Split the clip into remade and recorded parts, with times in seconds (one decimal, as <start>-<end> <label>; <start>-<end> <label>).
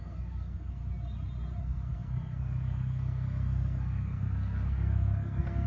0.0-0.8 remade; 0.8-1.6 recorded; 1.6-5.7 remade